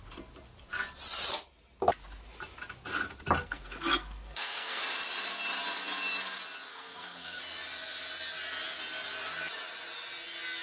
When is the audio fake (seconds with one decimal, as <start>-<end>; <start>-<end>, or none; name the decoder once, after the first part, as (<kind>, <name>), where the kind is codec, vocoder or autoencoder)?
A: 3.4-4.8 (codec, SNAC); 6.7-7.4